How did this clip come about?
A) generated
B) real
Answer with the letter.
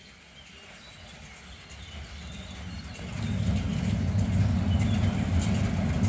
B